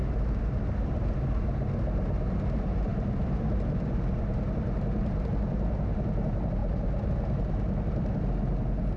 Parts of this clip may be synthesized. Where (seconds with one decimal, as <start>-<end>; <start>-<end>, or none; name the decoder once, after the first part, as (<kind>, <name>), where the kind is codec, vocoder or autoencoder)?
2.9-3.9 (vocoder, BigVGAN v2)